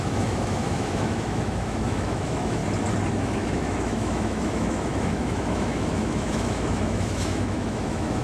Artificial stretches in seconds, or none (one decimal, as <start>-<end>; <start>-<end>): 0.0-2.6; 3.1-8.2